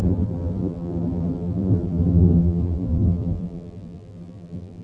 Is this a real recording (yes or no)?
no